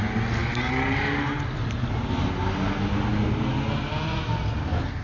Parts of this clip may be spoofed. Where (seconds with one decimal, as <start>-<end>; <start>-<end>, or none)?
none

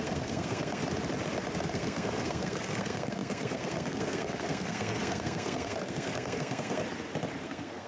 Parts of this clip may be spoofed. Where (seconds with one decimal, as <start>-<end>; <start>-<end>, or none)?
0.0-0.8; 1.7-6.8; 7.4-7.9

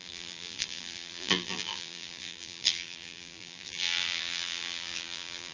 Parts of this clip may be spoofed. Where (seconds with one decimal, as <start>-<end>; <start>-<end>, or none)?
0.0-5.5

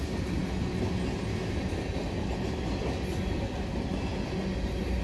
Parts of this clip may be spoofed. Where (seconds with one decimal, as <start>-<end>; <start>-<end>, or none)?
none

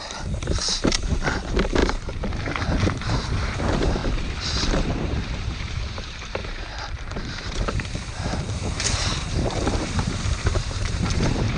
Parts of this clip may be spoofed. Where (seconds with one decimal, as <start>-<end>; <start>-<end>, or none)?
0.0-1.8; 2.8-4.0; 4.9-11.6

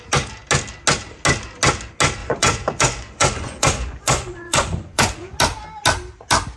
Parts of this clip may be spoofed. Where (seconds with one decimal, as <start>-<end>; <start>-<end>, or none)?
2.2-5.4

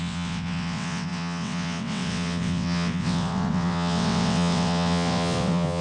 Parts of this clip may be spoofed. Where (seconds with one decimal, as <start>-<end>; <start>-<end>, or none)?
0.0-5.8